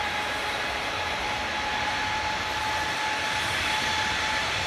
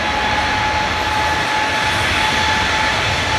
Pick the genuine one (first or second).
second